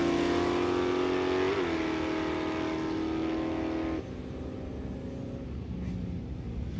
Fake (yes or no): no